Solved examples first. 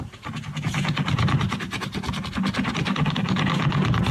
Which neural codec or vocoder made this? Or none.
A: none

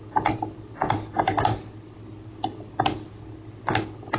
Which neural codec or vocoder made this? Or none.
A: none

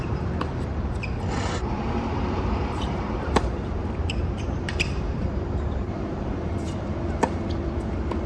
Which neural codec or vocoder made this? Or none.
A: vocoder, BigVGAN v2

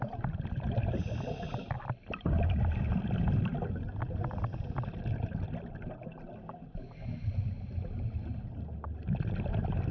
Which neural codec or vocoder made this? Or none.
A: none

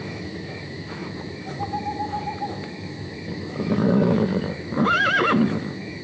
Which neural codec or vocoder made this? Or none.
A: autoencoder, DAC-VAE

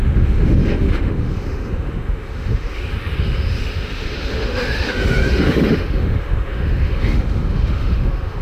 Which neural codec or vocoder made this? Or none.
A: autoencoder, DAC-VAE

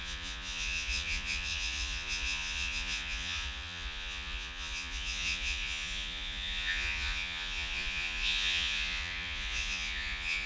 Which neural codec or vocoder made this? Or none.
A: vocoder, Vocos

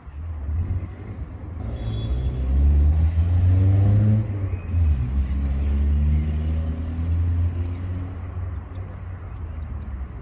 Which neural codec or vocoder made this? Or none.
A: none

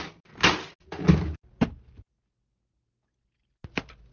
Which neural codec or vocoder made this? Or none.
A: none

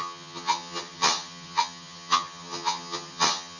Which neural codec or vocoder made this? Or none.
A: vocoder, HiFi-GAN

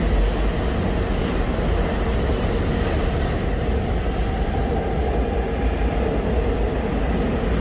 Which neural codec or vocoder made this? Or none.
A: none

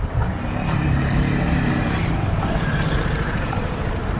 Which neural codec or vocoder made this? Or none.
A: vocoder, BigVGAN v2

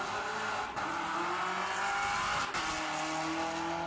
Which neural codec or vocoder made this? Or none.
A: none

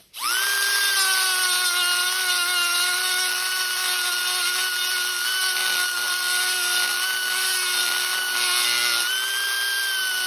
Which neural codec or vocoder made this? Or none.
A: none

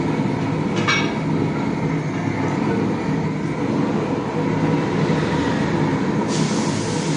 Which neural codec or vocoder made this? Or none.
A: none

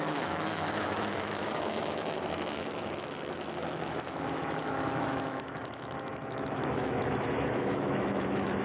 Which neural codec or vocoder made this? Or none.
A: autoencoder, DAC-VAE